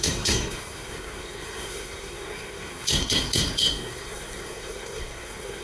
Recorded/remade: remade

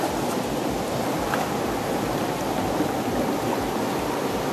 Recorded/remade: recorded